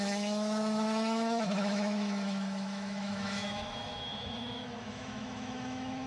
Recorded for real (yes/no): no